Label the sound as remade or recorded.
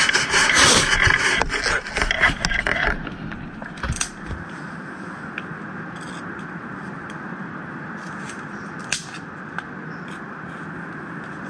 recorded